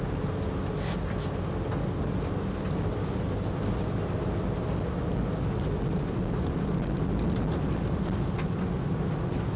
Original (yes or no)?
yes